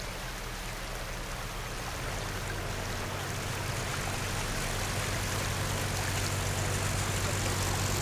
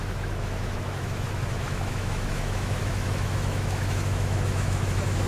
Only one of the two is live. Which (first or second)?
first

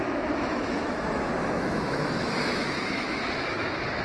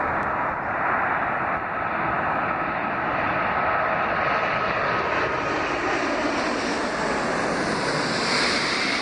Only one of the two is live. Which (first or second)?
second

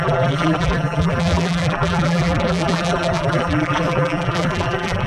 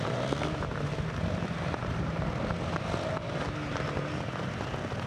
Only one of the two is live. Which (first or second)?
second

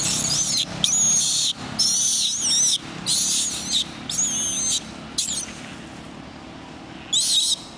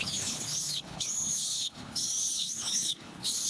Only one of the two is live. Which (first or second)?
first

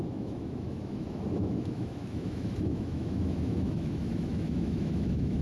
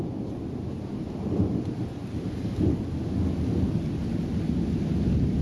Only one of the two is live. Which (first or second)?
second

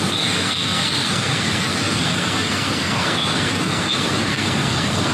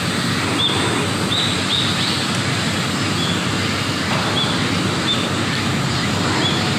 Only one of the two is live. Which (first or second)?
second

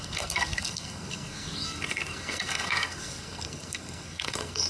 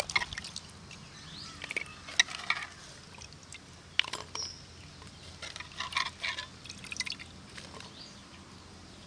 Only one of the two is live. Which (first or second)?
second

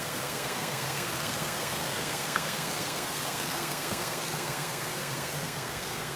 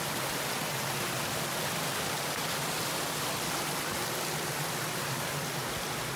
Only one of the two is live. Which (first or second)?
second